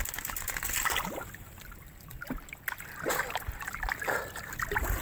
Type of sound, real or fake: real